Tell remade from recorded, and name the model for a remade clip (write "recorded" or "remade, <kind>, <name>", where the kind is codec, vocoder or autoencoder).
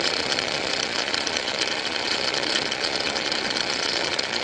remade, vocoder, Vocos